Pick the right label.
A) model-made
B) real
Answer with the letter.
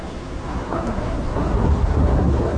A